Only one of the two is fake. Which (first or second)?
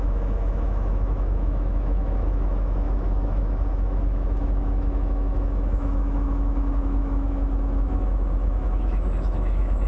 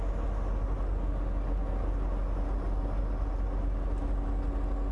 first